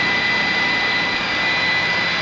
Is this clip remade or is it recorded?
remade